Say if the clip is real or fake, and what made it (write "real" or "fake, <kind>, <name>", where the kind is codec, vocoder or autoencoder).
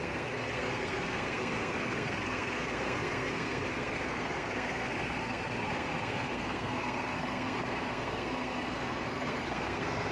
fake, codec, SNAC